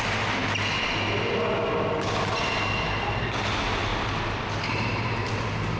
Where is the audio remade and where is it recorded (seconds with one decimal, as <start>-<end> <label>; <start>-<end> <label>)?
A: 0.0-5.8 recorded

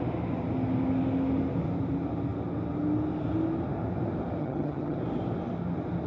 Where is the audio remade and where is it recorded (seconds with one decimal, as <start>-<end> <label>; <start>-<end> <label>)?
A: 0.0-4.4 recorded; 4.4-5.0 remade; 5.0-6.1 recorded

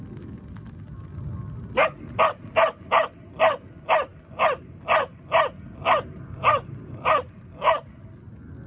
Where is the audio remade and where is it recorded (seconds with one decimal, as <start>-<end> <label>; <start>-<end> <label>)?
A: 0.0-8.7 recorded

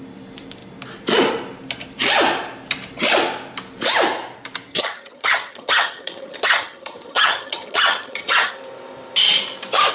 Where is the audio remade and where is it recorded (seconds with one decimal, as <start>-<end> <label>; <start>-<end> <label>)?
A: 0.0-4.7 recorded; 4.7-8.5 remade; 8.5-9.9 recorded

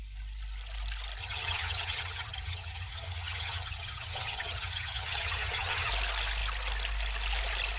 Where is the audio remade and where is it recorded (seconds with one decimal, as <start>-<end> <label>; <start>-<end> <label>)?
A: 0.0-1.2 recorded; 1.2-5.9 remade; 5.9-7.8 recorded

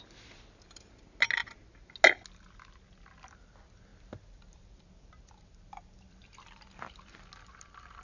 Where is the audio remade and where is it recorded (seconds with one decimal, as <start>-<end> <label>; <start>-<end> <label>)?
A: 0.0-8.0 recorded

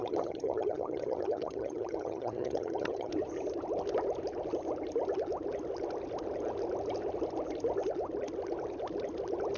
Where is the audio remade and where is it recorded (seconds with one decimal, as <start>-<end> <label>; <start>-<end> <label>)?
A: 0.0-3.1 remade; 3.1-9.6 recorded

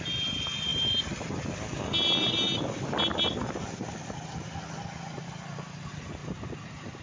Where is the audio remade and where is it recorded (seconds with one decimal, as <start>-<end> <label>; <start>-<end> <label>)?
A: 0.0-7.0 recorded